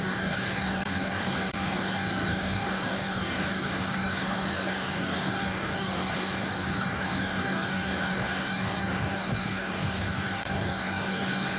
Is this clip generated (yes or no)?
yes